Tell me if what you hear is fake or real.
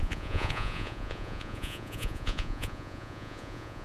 fake